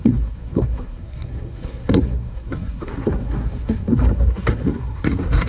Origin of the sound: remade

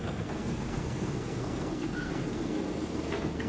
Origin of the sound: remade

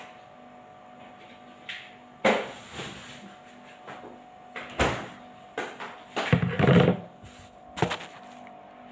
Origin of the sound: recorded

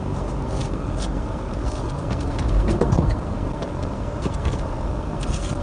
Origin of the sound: remade